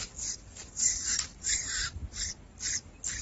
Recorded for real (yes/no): no